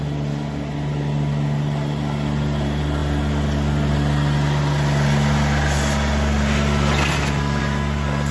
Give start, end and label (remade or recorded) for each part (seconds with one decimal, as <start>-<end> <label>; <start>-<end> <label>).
0.0-8.3 recorded